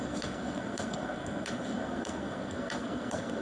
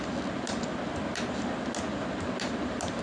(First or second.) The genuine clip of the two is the second